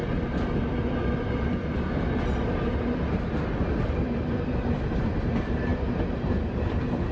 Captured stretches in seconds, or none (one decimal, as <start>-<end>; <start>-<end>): 0.0-3.7